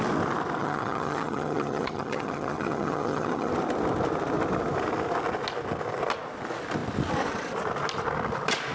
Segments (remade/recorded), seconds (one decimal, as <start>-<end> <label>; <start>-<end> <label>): 0.0-0.6 recorded; 0.6-3.5 remade; 3.5-8.7 recorded